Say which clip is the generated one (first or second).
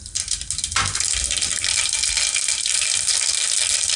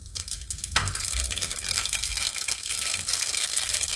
second